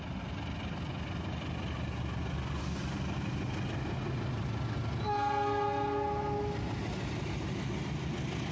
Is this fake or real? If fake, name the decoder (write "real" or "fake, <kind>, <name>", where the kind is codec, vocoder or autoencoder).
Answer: real